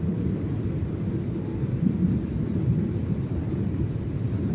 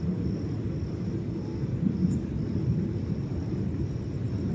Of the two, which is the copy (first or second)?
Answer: first